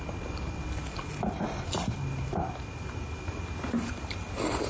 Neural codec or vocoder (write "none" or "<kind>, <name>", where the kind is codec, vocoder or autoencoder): none